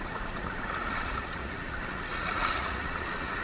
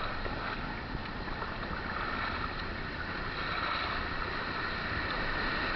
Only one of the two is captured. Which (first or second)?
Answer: second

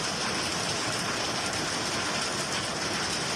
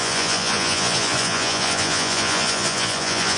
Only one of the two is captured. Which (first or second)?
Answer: first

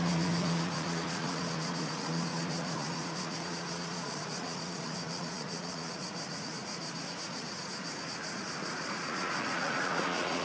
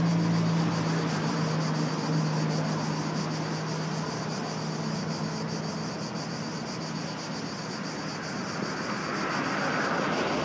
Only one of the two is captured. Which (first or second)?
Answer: second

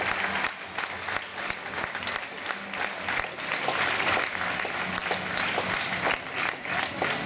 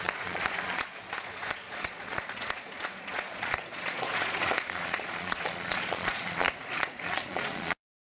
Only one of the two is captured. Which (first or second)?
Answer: first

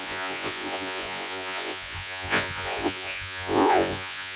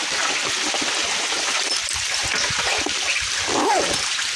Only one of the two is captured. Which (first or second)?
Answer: second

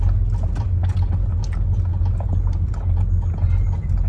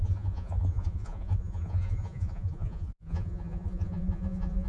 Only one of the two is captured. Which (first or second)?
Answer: first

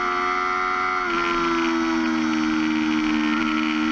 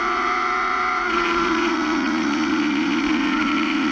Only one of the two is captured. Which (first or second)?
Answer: first